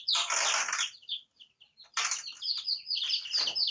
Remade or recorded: recorded